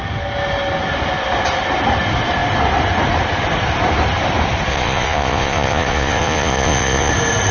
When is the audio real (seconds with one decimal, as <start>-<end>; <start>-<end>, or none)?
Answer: 0.0-4.7; 7.1-7.5